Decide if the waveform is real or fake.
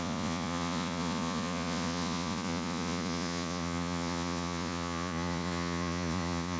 fake